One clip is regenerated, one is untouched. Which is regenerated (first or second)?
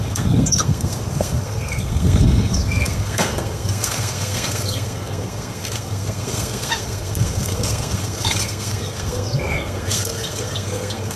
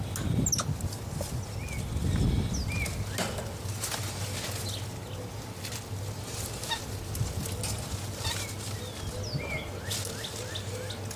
first